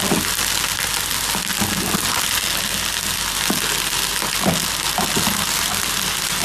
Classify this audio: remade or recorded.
recorded